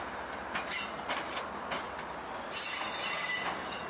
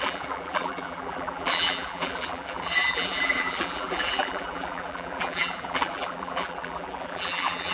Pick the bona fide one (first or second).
first